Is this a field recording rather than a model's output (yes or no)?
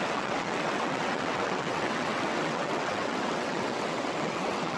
no